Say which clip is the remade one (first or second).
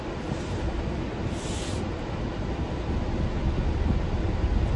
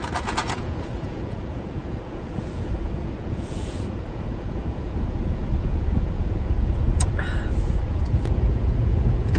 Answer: second